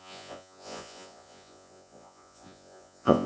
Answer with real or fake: fake